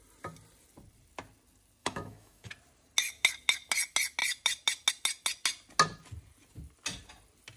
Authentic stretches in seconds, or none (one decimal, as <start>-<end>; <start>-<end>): 0.0-1.8; 2.5-7.6